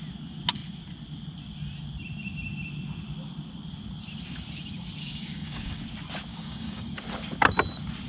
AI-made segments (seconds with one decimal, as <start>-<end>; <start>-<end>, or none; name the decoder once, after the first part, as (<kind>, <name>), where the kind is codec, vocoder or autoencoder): 5.0-5.8 (codec, DAC); 6.3-6.9